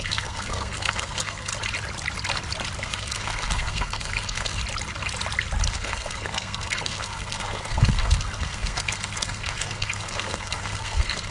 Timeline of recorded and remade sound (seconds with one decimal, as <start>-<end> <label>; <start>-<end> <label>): 0.0-1.5 remade; 1.5-2.8 recorded; 2.8-4.6 remade; 4.6-5.7 recorded; 5.7-11.3 remade